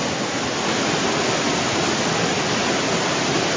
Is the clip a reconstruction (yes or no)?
no